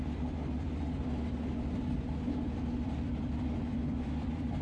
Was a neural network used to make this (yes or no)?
yes